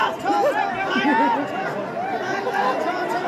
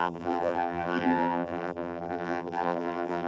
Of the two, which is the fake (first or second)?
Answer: second